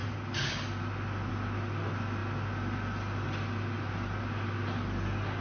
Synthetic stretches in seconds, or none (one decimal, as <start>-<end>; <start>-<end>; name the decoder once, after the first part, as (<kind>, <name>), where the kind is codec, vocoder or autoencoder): none